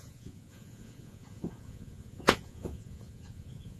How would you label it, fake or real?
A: fake